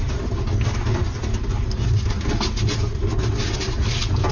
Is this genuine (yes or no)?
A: yes